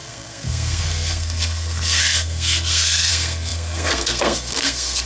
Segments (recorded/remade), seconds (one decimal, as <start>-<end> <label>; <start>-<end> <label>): 0.0-5.1 remade